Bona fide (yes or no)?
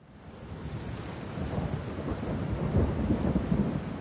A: yes